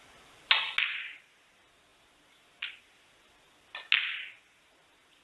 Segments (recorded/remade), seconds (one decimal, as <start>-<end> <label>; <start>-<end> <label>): 0.0-5.2 recorded